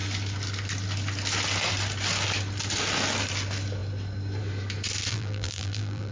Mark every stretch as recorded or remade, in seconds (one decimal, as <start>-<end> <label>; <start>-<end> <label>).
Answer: 0.0-5.1 recorded; 5.1-6.1 remade